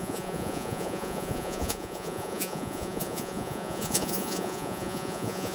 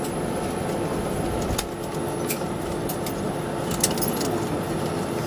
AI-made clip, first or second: first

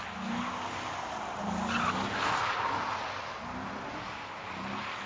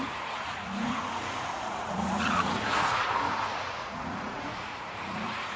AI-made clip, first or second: second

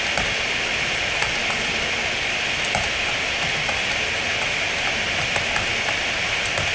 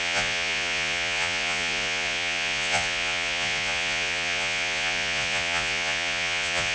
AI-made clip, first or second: second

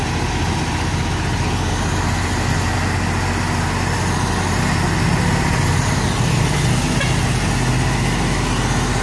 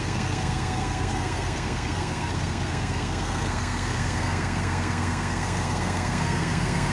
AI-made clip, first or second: second